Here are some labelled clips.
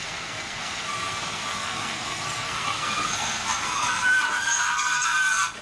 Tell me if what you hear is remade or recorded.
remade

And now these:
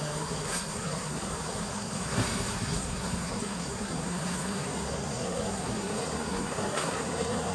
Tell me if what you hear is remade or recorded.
remade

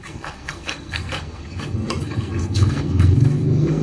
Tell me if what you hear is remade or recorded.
remade